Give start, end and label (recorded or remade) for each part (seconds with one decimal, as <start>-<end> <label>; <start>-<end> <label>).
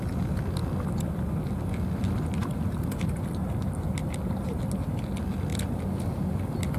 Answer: 0.0-6.8 recorded